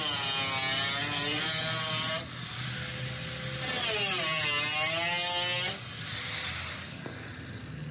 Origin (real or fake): real